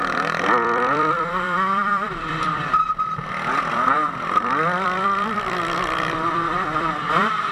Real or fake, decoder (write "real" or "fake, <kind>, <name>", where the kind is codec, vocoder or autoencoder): fake, vocoder, BigVGAN v2